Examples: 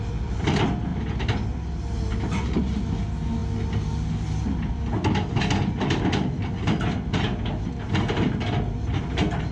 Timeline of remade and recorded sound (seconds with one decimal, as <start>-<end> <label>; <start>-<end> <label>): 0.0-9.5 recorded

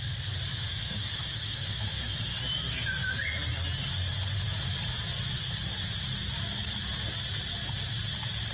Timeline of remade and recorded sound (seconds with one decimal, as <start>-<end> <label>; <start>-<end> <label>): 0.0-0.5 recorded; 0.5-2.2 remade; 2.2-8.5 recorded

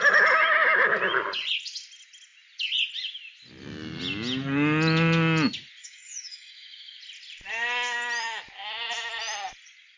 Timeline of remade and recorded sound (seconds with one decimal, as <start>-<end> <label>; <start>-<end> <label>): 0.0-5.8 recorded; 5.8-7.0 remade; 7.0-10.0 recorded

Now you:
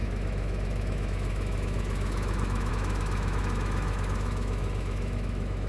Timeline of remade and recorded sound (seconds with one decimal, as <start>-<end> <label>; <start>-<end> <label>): 0.0-5.7 remade